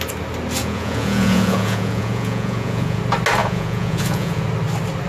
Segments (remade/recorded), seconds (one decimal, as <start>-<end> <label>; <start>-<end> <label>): 0.0-0.6 recorded; 0.6-3.0 remade; 3.0-3.4 recorded; 3.4-4.4 remade; 4.4-5.1 recorded